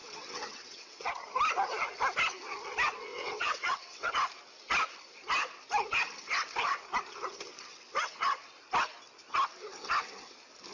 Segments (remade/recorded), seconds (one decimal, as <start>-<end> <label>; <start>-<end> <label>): 0.0-1.1 remade; 1.1-3.1 recorded; 3.1-4.1 remade; 4.1-10.7 recorded